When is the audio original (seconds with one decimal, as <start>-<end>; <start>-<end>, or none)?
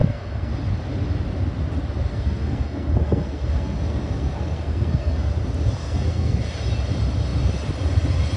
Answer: 0.5-2.1; 5.3-5.8; 6.4-8.4